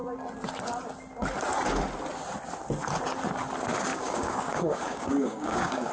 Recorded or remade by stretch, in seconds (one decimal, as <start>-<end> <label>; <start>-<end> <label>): 0.0-3.9 recorded; 3.9-5.9 remade